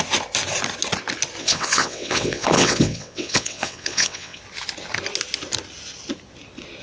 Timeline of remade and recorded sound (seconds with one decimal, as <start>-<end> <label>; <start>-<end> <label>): 0.0-1.4 recorded; 1.4-4.4 remade; 4.4-6.8 recorded